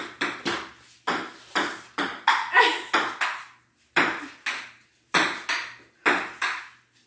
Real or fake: real